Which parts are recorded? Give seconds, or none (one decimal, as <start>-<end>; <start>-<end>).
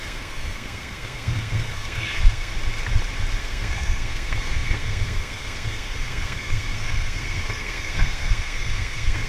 2.5-3.4